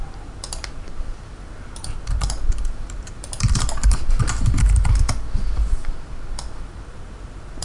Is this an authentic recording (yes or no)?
no